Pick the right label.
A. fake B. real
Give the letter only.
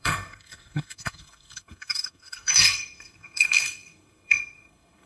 A